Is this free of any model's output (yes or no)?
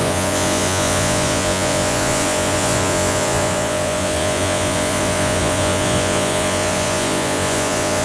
no